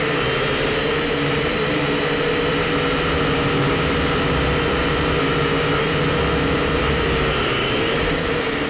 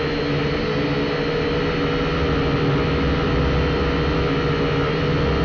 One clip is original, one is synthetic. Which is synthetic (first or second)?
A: first